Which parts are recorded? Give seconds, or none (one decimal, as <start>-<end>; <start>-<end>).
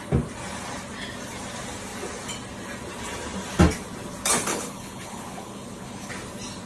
0.0-4.5; 6.1-6.7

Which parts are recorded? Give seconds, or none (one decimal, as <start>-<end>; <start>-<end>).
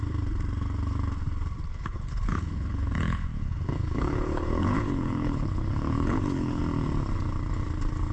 0.0-1.7; 6.6-8.1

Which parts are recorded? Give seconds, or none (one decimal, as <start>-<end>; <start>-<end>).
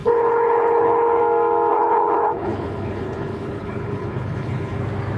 1.2-1.7; 4.8-5.2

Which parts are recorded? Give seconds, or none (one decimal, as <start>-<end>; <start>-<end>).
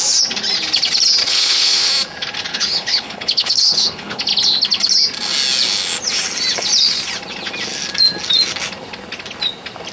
0.0-1.2; 1.9-2.5; 4.2-9.9